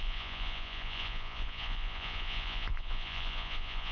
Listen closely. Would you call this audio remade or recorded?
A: remade